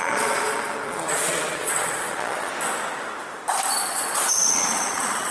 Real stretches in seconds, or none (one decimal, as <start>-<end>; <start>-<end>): 2.5-3.7